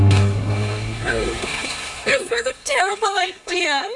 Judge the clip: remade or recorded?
remade